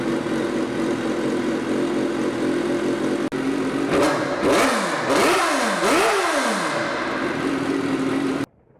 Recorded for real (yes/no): yes